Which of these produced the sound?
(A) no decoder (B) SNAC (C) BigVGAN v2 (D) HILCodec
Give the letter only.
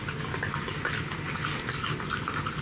A